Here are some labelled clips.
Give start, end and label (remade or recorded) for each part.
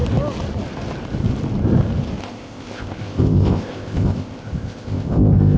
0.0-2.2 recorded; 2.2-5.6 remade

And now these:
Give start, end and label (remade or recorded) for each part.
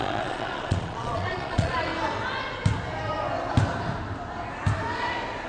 0.0-1.9 remade; 1.9-5.5 recorded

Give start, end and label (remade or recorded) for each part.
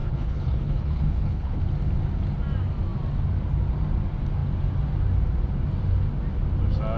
0.0-1.6 remade; 1.6-7.0 recorded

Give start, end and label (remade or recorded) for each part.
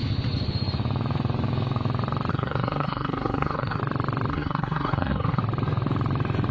0.0-2.3 recorded; 2.3-3.8 remade; 3.8-4.3 recorded; 4.3-5.4 remade; 5.4-6.5 recorded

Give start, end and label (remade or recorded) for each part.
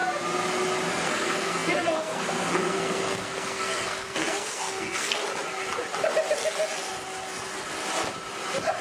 0.0-0.9 recorded; 0.9-5.2 remade; 5.2-8.8 recorded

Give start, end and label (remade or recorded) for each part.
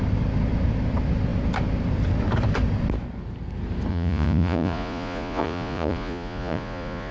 0.0-3.9 recorded; 3.9-7.1 remade